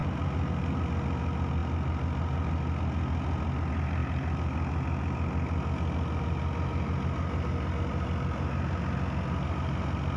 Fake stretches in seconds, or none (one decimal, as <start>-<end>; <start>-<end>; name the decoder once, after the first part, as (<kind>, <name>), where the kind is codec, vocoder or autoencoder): none